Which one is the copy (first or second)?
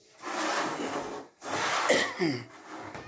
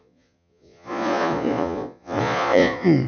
second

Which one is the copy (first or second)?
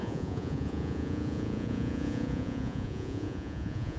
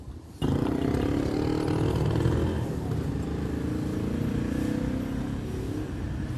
first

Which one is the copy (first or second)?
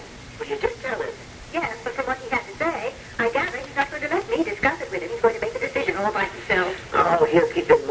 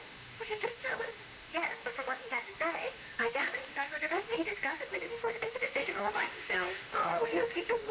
second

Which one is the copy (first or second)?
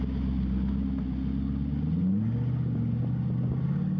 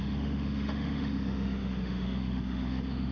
second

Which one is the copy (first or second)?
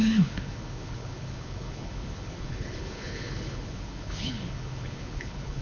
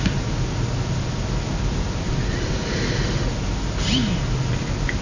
first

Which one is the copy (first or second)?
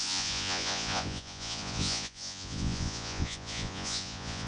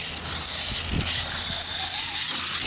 first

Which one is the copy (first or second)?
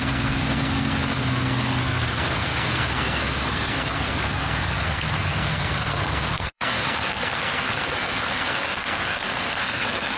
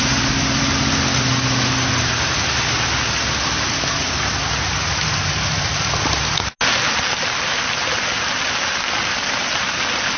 first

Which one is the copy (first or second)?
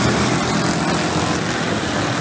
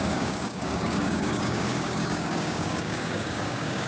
second